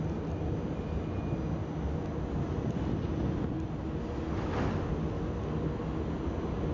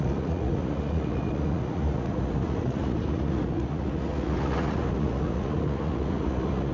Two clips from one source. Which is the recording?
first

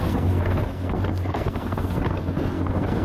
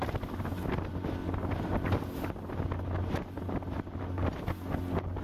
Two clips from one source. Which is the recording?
second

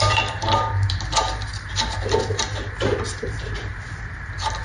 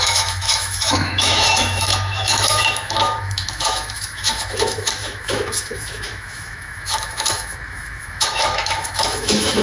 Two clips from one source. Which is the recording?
first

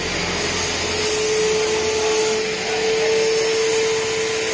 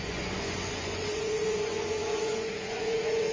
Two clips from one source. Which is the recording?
first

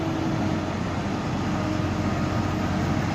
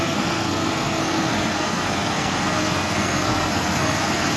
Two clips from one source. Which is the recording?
first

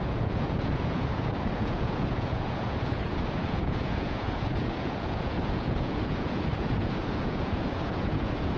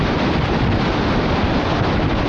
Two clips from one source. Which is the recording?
second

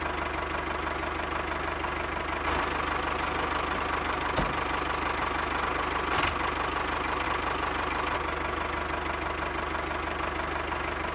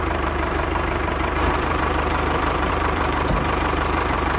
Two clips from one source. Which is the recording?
first